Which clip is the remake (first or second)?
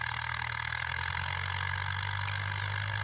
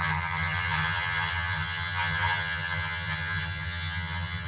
second